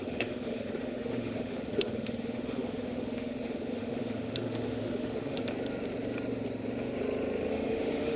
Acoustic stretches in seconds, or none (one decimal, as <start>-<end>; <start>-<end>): 5.4-7.5